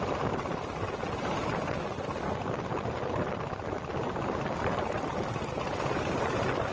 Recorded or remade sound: recorded